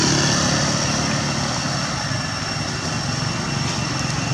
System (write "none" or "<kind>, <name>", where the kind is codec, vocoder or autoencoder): none